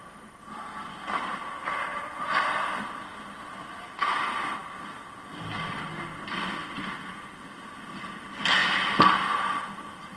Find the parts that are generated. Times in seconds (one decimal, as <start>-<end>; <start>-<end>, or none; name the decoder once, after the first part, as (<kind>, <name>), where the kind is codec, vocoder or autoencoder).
none